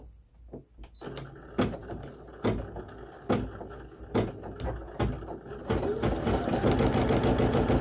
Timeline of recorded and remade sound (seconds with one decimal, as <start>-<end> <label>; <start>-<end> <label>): 0.0-7.8 recorded